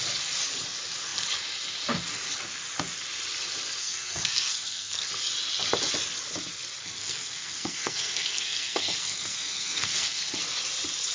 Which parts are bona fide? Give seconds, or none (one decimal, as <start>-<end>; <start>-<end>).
0.0-3.8; 5.1-6.8; 10.4-11.1